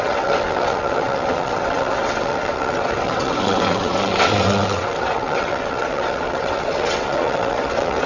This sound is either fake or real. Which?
fake